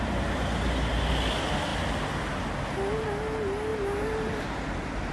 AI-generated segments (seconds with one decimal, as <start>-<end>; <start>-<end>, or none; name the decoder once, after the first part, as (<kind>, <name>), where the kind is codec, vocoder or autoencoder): 3.7-4.4 (vocoder, BigVGAN v2)